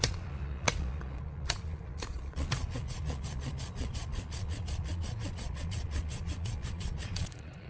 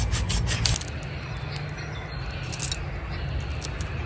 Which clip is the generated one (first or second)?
first